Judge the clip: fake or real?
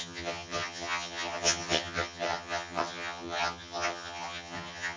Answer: fake